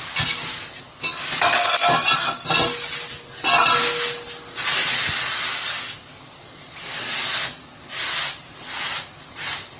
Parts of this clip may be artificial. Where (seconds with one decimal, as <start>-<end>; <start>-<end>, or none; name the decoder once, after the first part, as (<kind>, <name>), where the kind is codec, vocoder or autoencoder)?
none